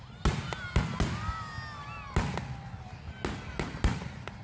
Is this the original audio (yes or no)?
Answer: yes